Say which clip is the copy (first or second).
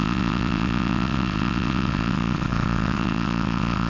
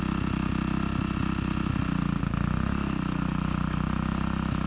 first